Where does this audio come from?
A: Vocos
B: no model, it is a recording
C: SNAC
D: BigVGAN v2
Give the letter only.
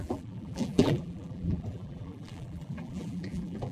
D